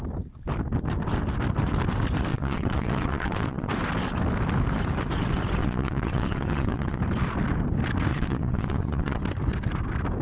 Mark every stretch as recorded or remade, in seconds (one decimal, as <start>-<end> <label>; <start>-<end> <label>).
0.0-2.3 recorded; 2.3-3.7 remade; 3.7-5.6 recorded; 5.6-7.0 remade; 7.0-8.1 recorded; 8.1-9.2 remade; 9.2-10.2 recorded